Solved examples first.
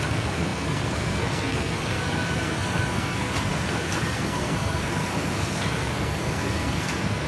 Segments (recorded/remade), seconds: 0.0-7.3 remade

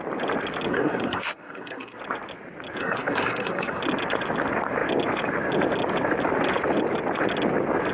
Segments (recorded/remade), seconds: 0.0-0.7 recorded; 0.7-2.0 remade; 2.0-2.8 recorded; 2.8-3.8 remade; 3.8-7.9 recorded